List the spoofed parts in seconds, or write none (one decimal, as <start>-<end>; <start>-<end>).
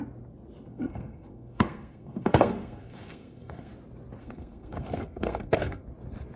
0.6-3.7; 4.2-5.8